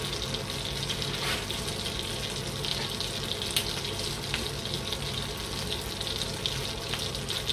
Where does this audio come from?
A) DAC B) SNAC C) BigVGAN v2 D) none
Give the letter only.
D